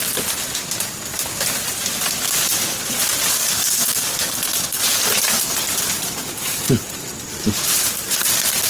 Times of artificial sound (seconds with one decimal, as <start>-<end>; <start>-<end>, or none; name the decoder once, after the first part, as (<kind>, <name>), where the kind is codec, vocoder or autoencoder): 3.4-4.8 (codec, DAC)